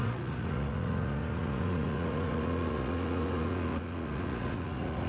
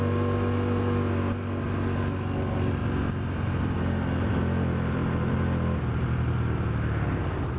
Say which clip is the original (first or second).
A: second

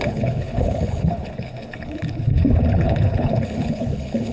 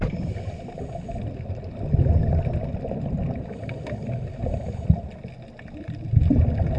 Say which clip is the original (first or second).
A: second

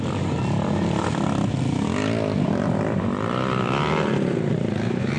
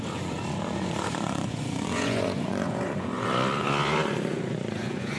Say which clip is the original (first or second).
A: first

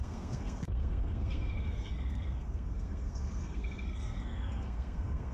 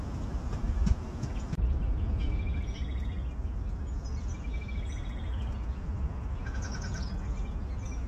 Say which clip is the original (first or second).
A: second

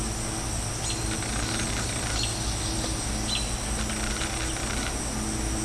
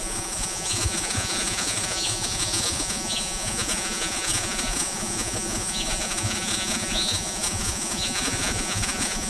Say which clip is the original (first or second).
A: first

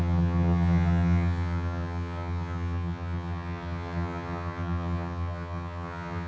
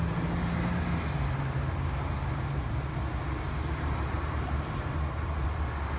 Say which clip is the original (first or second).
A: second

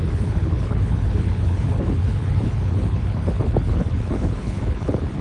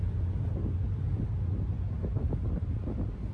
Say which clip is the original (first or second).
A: second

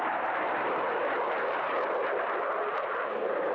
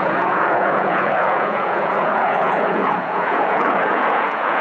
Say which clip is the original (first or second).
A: first